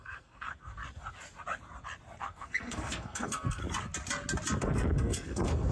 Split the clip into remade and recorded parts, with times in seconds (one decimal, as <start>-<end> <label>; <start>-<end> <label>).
0.0-0.8 remade; 0.8-2.2 recorded; 2.2-3.6 remade; 3.6-4.6 recorded; 4.6-5.7 remade